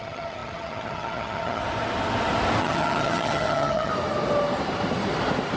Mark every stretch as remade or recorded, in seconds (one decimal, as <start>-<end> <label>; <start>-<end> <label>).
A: 0.0-1.6 remade; 1.6-2.6 recorded; 2.6-3.9 remade; 3.9-5.6 recorded